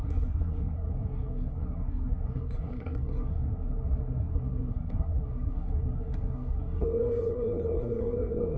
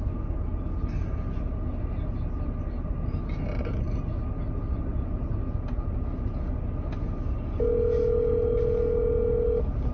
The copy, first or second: first